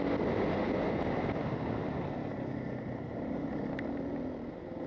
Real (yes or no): yes